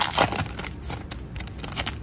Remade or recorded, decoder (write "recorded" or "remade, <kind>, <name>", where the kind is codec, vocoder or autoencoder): recorded